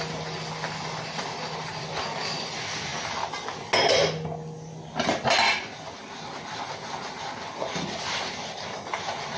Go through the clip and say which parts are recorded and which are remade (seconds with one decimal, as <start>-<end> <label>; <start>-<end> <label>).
0.0-9.4 recorded

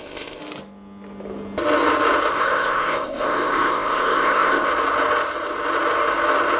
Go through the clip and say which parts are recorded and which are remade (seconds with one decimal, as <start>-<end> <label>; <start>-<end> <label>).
0.0-0.4 remade; 0.4-2.3 recorded; 2.3-4.7 remade; 4.7-6.6 recorded